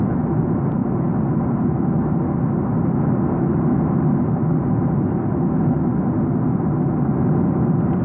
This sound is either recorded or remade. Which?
recorded